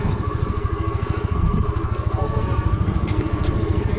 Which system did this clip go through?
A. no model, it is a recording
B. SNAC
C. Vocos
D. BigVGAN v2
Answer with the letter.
B